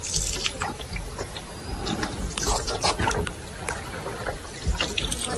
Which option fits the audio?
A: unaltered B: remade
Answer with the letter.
A